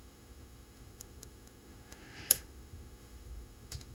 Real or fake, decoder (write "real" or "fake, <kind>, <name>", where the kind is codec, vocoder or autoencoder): fake, autoencoder, DAC-VAE